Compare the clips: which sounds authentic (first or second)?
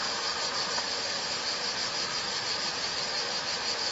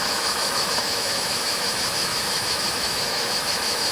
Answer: first